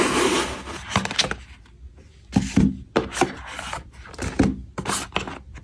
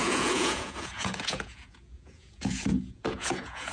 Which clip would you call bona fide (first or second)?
first